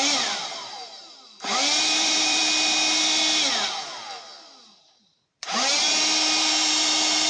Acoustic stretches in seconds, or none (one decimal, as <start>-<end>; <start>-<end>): 2.4-4.8